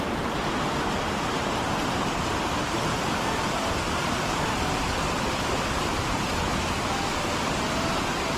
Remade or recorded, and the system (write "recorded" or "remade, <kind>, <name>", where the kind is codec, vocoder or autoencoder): recorded